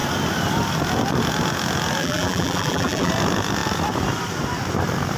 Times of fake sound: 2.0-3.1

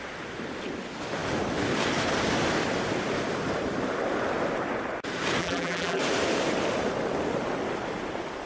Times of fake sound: 5.4-6.0

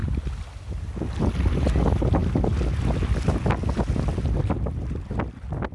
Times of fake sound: none

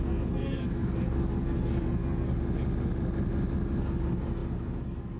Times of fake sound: 0.0-2.3; 3.8-5.2